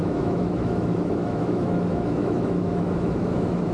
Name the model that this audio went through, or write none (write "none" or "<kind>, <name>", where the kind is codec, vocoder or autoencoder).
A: autoencoder, DAC-VAE